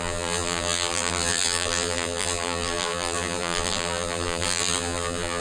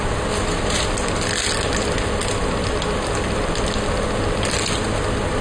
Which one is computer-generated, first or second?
first